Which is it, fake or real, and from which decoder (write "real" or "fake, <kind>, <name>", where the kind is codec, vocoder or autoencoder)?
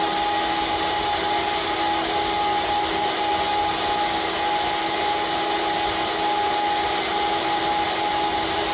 real